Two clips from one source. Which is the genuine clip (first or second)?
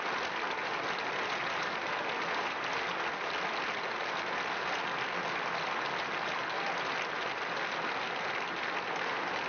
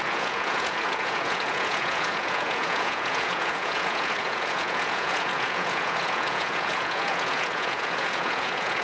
first